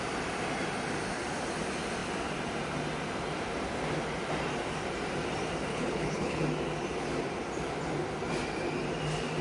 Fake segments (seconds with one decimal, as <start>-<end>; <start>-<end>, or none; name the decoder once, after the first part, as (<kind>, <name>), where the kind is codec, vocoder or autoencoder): 5.7-6.4 (codec, HILCodec)